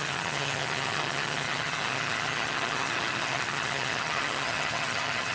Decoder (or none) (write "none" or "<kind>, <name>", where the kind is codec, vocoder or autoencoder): vocoder, HiFi-GAN